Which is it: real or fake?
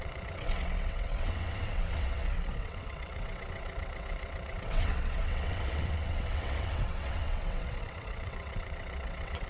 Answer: fake